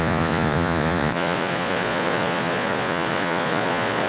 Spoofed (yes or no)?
yes